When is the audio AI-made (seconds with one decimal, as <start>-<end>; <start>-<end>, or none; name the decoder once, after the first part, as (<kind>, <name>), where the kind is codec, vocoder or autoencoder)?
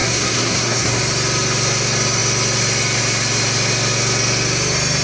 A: 0.0-1.0 (codec, SNAC)